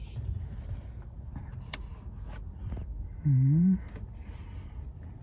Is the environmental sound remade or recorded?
recorded